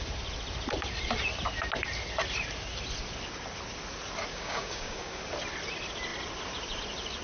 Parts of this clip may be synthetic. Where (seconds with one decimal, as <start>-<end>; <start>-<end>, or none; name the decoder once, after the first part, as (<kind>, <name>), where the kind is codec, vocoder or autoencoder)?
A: 4.3-5.2 (codec, DAC)